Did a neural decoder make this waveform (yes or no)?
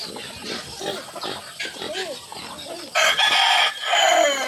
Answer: no